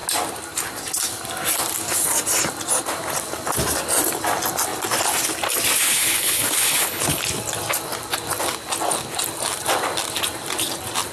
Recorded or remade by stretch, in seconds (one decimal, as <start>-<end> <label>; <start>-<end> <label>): 0.0-5.8 recorded; 5.8-7.2 remade; 7.2-11.1 recorded